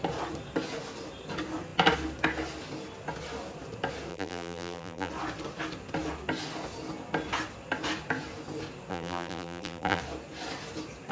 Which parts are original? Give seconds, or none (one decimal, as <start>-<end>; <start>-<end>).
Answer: 0.0-4.1; 5.1-8.9; 10.0-11.1